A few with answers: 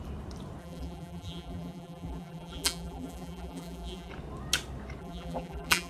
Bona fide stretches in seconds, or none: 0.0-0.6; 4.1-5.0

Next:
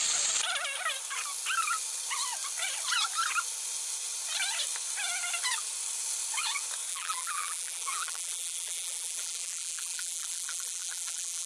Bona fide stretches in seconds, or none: 0.0-6.9

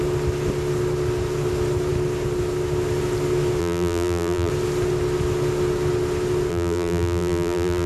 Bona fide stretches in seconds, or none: 0.0-3.6; 4.5-6.5

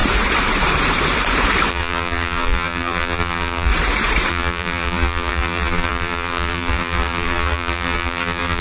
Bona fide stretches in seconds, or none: 0.0-1.7; 3.7-4.3